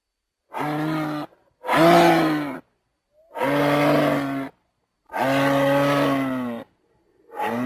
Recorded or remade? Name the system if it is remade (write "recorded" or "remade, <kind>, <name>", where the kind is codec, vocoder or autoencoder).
recorded